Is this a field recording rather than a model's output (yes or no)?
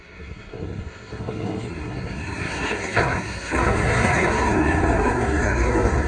no